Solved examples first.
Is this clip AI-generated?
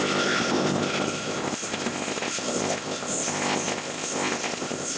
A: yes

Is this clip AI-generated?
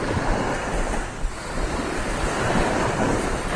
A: no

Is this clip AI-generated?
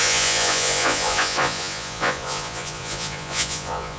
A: yes